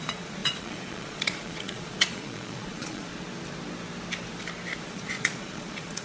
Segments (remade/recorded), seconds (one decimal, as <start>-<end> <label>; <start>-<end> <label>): 0.0-3.1 remade; 3.1-4.8 recorded; 4.8-6.0 remade